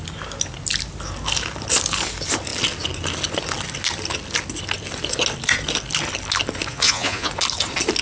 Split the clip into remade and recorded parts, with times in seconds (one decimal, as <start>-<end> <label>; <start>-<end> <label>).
0.0-6.7 recorded; 6.7-7.3 remade; 7.3-8.0 recorded